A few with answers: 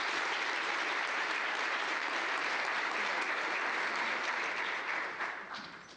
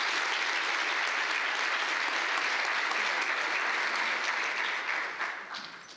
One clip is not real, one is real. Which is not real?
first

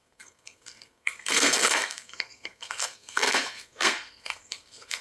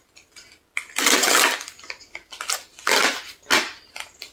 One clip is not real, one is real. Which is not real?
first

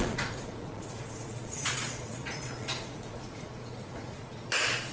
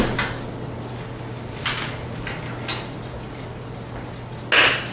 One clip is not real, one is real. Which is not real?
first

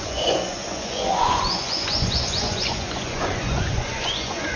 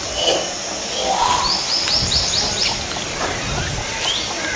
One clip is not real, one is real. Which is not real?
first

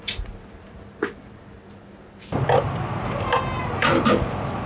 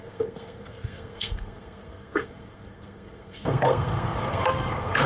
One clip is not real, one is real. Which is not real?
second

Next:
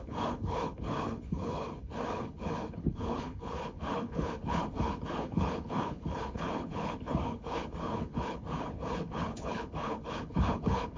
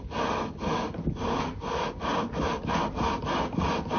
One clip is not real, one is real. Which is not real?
first